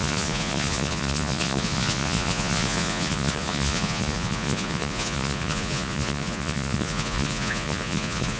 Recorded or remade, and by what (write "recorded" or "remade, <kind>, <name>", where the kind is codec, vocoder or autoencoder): remade, vocoder, Vocos